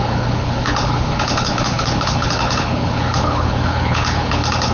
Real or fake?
fake